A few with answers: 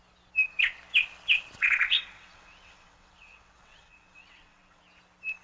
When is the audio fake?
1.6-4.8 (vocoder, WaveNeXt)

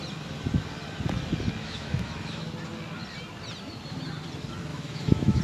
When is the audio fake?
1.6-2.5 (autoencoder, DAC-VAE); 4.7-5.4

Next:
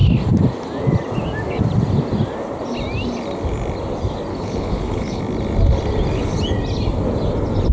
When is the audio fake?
4.3-5.2 (codec, HILCodec)

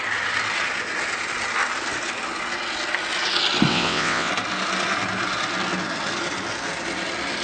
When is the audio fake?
3.7-4.3 (vocoder, WaveNeXt)

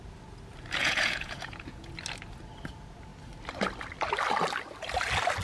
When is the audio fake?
0.8-1.9 (vocoder, Vocos)

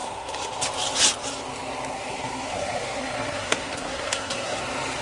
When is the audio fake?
0.0-0.6 (codec, SNAC); 1.9-4.6